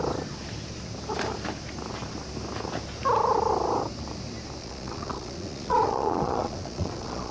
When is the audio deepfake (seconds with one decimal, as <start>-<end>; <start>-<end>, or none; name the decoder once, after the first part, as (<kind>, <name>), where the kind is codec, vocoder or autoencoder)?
4.6-7.3 (vocoder, Vocos)